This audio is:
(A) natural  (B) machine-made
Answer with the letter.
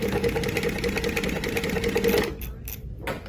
A